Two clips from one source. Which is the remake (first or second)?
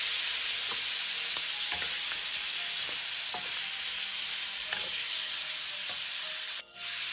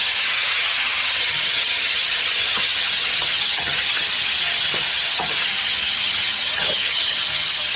second